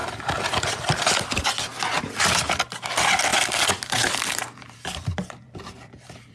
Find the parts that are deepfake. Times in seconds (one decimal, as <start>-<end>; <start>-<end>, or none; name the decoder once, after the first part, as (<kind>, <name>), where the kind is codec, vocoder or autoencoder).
0.0-1.7 (vocoder, BigVGAN v2); 2.9-3.3; 3.9-6.3